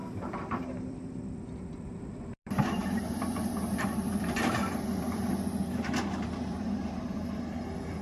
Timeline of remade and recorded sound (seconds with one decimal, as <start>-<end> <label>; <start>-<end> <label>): 0.0-8.0 remade